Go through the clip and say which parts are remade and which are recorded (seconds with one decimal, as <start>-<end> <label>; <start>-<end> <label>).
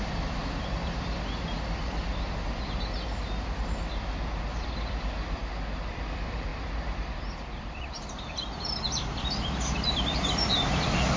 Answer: 0.0-5.4 remade; 5.4-5.9 recorded; 5.9-11.2 remade